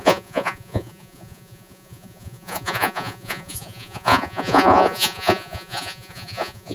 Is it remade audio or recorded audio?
remade